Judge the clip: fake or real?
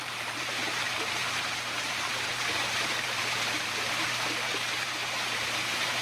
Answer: fake